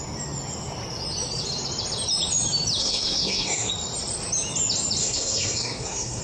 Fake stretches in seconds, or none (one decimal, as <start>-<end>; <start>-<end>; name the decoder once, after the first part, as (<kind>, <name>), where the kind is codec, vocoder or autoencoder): 2.8-3.7 (codec, SNAC); 5.0-6.2